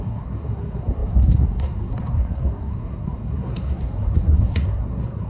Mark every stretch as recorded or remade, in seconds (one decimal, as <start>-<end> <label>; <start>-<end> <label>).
0.0-5.3 remade